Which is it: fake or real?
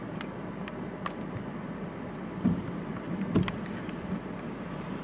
fake